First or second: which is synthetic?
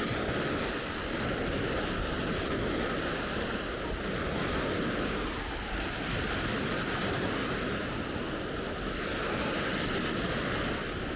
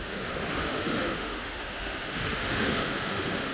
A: second